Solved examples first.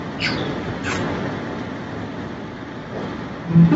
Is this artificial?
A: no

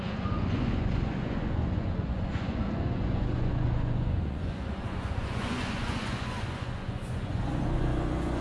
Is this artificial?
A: yes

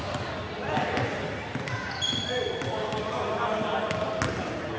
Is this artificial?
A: no